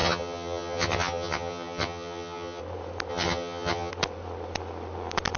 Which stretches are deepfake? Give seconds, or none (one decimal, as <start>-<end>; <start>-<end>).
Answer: 0.0-2.6; 3.1-3.9